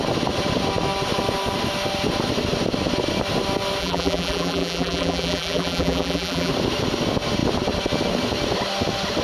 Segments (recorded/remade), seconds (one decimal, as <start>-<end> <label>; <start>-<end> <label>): 0.0-3.8 recorded; 3.8-6.5 remade; 6.5-9.2 recorded